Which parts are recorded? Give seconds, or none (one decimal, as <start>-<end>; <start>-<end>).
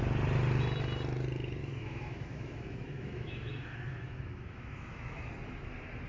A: 0.0-1.6; 5.3-6.1